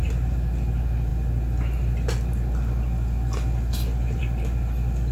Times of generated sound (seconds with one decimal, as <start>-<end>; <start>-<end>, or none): none